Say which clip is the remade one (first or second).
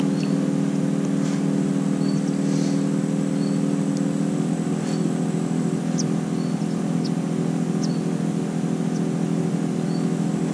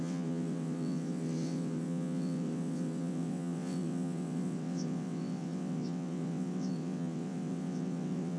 second